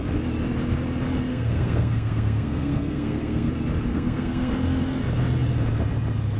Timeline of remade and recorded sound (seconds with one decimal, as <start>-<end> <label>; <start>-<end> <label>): 0.0-1.3 recorded; 1.3-3.5 remade; 3.5-3.9 recorded; 3.9-4.5 remade; 4.5-6.4 recorded